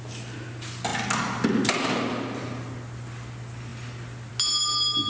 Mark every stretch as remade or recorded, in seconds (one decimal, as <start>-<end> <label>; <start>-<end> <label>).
0.0-5.1 recorded